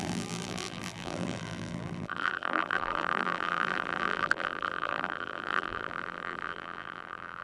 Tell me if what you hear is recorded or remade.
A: remade